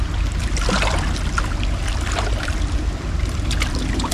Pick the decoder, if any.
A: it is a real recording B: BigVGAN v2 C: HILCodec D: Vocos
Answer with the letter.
A